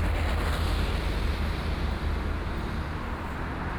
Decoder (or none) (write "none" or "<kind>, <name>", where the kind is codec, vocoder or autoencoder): none